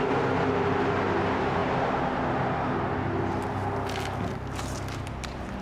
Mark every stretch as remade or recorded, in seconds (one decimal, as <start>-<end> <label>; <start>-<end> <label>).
0.0-5.6 recorded